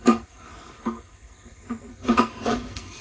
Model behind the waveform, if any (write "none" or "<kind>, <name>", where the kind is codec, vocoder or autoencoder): codec, SNAC